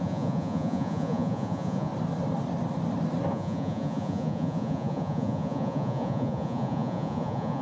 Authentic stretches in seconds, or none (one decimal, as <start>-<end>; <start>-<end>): 1.9-3.3